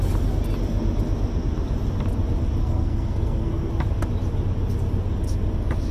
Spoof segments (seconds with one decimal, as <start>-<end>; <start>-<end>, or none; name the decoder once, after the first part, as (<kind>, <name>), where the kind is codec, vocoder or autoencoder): 2.6-3.7 (codec, SNAC)